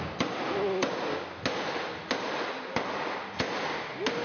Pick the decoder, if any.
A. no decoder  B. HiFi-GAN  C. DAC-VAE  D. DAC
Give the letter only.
A